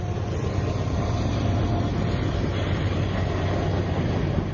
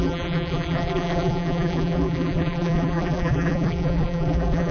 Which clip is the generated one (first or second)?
second